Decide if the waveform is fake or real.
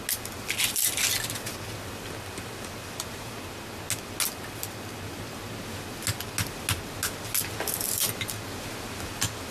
real